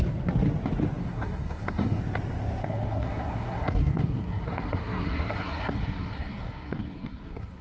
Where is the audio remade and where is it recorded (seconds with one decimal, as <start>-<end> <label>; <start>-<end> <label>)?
0.0-1.0 recorded; 1.0-2.0 remade; 2.0-2.6 recorded; 2.6-7.6 remade